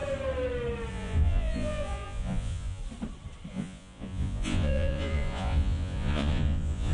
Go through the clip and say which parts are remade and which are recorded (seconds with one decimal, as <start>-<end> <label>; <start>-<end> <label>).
0.0-0.9 recorded; 0.9-2.8 remade; 2.8-3.5 recorded; 3.5-6.9 remade